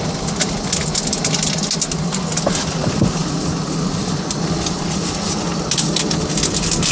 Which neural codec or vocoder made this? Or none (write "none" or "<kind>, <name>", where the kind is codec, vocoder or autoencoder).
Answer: none